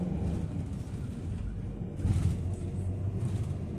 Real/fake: real